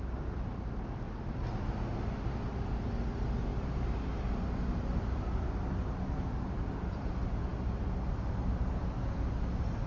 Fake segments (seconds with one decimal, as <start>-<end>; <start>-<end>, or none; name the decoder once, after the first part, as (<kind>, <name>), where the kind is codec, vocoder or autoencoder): none